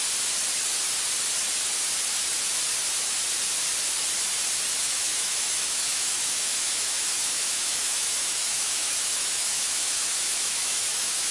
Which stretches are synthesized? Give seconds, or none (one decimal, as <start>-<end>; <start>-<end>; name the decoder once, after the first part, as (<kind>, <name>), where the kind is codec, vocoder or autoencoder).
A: 4.8-11.3 (autoencoder, DAC-VAE)